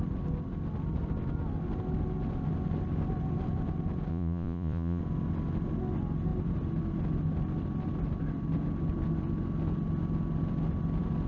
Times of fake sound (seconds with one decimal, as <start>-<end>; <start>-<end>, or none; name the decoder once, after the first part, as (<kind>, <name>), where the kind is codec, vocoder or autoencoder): 4.1-5.0 (vocoder, Vocos)